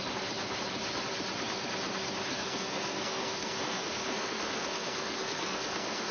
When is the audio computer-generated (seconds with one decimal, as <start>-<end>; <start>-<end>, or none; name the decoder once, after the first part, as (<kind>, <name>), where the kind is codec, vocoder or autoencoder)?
2.3-6.1 (codec, SNAC)